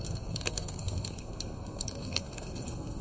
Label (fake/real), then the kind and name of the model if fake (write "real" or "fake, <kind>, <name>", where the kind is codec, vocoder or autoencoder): fake, codec, SNAC